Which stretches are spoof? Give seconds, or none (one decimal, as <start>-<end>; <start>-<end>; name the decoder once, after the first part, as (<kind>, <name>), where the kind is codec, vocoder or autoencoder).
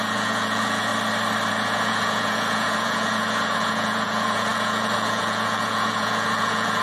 0.0-0.9 (vocoder, Vocos); 1.5-6.8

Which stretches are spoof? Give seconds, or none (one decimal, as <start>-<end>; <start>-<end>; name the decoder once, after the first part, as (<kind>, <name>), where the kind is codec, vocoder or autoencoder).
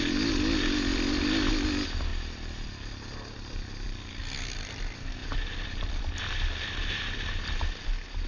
0.9-1.5 (vocoder, BigVGAN v2); 2.1-3.5; 5.2-6.2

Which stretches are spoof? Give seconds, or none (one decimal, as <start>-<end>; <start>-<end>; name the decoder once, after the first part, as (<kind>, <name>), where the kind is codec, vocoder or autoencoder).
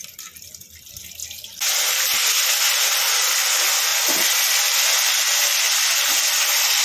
none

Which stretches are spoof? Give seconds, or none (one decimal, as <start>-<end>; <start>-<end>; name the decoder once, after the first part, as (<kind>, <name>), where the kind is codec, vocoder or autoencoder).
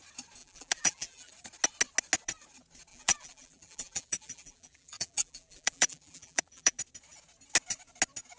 0.4-1.3 (vocoder, BigVGAN v2); 2.9-6.8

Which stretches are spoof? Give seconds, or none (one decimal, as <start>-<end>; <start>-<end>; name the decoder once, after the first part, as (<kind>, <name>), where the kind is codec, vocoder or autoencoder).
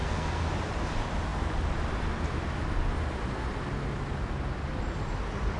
0.0-0.5 (codec, SNAC)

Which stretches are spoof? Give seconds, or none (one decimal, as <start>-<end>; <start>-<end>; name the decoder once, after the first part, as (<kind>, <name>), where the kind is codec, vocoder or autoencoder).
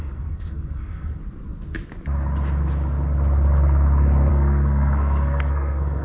0.0-1.2 (codec, SNAC); 4.3-6.0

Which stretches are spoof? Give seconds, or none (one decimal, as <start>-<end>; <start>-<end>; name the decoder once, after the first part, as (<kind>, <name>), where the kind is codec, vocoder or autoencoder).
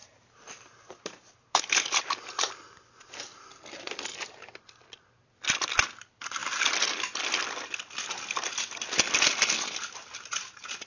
0.0-1.6 (vocoder, BigVGAN v2)